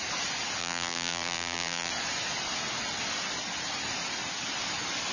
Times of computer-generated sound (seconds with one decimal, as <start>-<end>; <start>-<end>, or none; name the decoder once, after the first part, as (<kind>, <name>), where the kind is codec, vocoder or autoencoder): 0.6-1.9 (vocoder, BigVGAN v2)